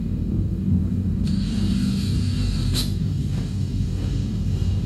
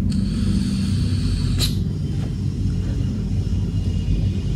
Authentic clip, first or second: second